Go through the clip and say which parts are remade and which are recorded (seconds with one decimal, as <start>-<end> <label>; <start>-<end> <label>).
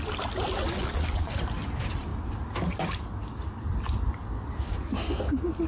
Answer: 0.0-0.8 recorded; 0.8-1.3 remade; 1.3-5.7 recorded